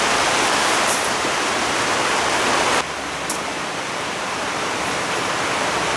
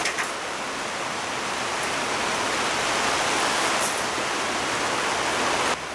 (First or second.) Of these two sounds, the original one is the second